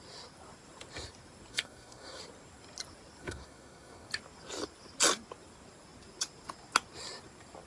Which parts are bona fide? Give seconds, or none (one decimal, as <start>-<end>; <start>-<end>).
0.0-1.5; 2.2-3.2; 4.1-7.7